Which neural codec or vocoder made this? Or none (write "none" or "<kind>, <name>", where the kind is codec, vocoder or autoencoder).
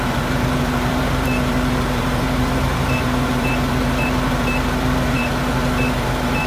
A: vocoder, BigVGAN v2